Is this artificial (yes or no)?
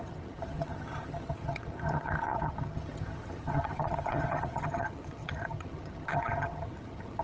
yes